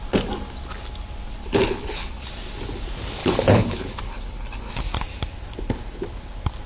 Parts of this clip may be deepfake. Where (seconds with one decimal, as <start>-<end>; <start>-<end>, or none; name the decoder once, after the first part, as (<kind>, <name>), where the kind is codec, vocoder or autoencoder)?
1.4-2.2 (codec, HILCodec); 3.2-4.7